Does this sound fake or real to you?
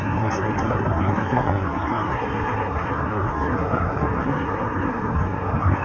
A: fake